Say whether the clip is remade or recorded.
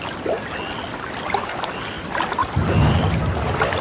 recorded